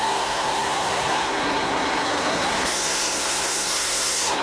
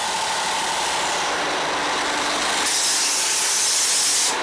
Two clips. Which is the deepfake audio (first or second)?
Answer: first